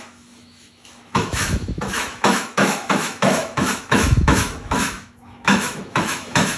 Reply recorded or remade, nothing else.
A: remade